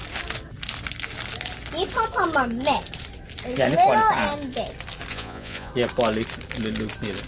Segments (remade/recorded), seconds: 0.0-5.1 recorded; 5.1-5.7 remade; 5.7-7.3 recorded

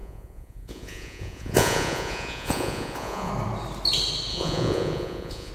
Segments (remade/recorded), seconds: 0.0-3.3 remade; 3.3-4.3 recorded; 4.3-5.5 remade

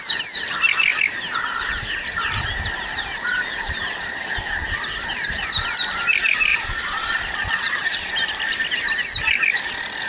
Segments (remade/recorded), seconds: 0.0-6.5 recorded; 6.5-8.1 remade; 8.1-10.1 recorded